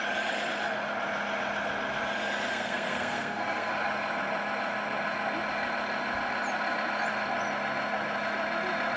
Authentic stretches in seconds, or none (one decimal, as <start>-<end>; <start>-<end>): 0.0-2.5; 3.7-9.0